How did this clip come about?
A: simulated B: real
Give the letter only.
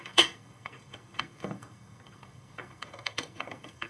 A